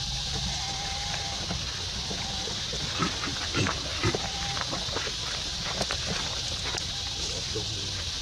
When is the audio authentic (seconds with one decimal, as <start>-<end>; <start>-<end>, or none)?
0.0-8.2